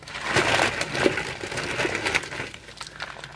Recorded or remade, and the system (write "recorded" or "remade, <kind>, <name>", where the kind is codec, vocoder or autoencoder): recorded